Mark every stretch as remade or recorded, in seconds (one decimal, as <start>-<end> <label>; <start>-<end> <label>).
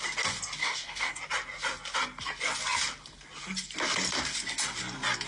0.0-0.6 recorded; 0.6-1.2 remade; 1.2-5.3 recorded